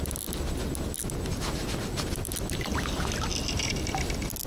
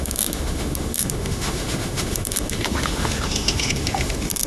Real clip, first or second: first